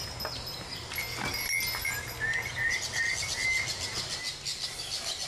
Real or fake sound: real